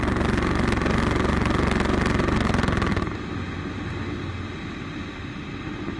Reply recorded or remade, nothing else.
recorded